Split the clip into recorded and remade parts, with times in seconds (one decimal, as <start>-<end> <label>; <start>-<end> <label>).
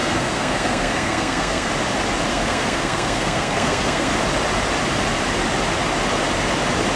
0.0-1.7 remade; 1.7-2.3 recorded; 2.3-4.1 remade; 4.1-7.0 recorded